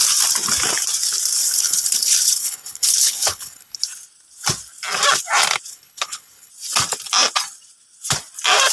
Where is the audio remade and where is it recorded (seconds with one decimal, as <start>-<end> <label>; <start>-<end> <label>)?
0.0-1.4 recorded; 1.4-3.8 remade; 3.8-5.7 recorded; 5.7-6.5 remade; 6.5-8.7 recorded